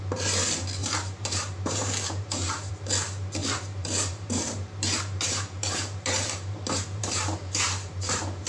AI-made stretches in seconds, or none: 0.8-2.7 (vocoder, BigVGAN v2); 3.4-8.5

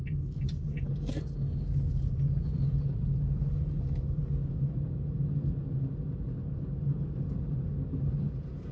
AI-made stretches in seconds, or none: none

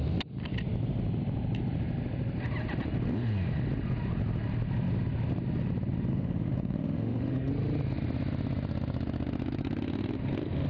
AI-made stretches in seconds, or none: 6.1-7.5 (autoencoder, DAC-VAE)

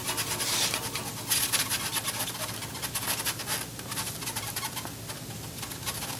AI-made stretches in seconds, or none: none

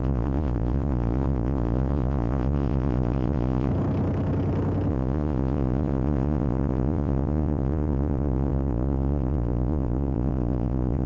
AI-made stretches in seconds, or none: 0.0-3.7 (vocoder, Vocos); 4.9-11.1